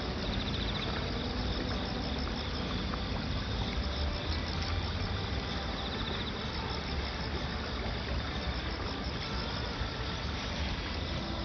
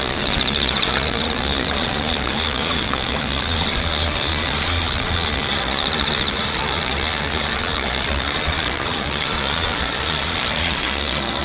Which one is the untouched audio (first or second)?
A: first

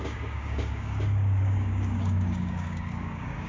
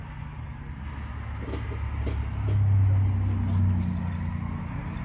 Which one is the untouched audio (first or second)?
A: second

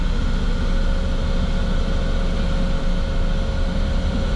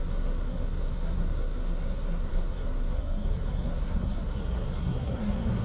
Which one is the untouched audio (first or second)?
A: first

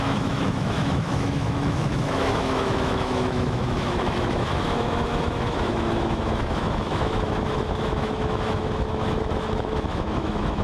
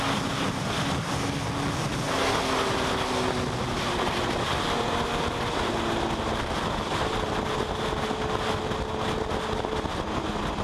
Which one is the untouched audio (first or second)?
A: second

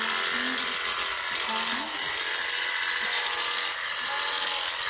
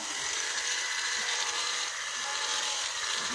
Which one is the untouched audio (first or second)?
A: first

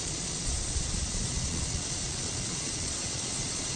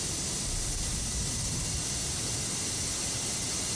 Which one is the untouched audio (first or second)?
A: second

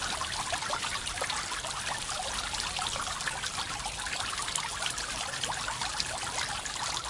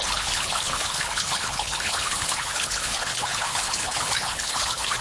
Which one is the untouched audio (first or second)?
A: first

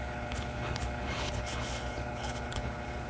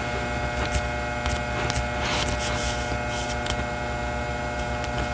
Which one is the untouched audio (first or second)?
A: second